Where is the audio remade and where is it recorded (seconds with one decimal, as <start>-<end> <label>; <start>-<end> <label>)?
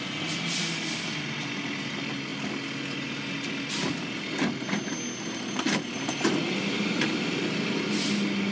0.0-8.5 recorded